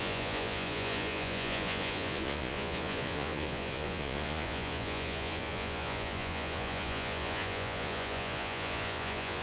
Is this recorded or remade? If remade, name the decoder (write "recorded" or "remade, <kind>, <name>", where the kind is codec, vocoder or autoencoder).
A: remade, vocoder, Vocos